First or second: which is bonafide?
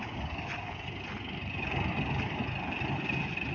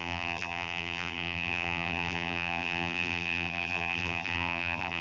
first